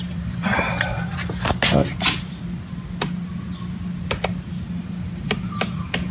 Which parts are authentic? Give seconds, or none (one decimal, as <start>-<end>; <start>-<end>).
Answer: 1.1-4.8